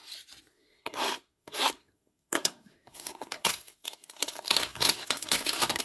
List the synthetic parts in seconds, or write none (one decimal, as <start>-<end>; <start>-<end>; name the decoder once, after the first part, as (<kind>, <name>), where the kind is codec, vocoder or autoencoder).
0.5-5.8 (codec, SNAC)